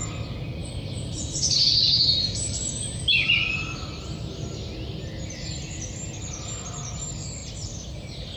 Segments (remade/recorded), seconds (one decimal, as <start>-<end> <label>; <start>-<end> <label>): 0.0-0.6 recorded; 0.6-3.0 remade; 3.0-7.4 recorded; 7.4-8.4 remade